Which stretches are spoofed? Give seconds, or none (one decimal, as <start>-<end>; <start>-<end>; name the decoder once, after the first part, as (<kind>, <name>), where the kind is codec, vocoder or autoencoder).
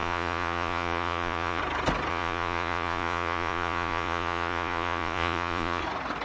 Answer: 0.0-1.6 (vocoder, Vocos); 2.1-5.8